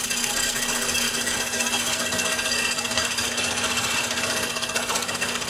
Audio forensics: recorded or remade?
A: remade